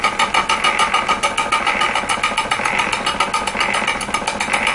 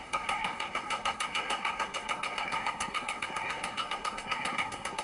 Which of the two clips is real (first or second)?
first